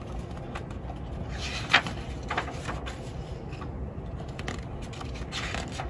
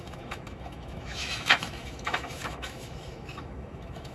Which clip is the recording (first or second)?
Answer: first